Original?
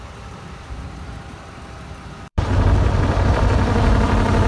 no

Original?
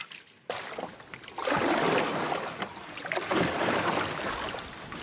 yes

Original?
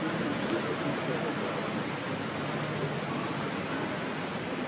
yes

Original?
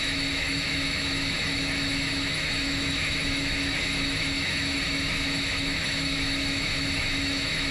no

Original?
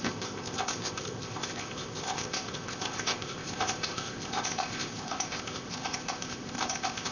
no